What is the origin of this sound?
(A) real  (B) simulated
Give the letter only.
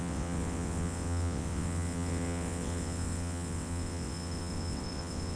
B